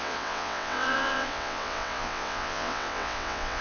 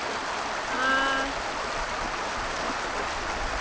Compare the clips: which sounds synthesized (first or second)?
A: first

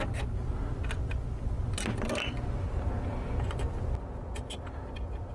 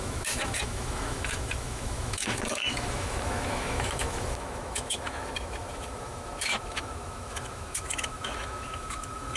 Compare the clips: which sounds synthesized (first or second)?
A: second